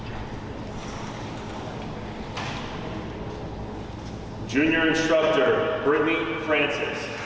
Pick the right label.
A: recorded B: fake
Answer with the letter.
A